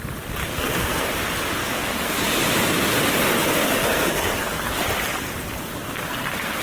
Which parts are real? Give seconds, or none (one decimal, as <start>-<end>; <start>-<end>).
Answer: 0.0-0.4; 1.1-1.6; 2.3-3.6; 4.8-5.8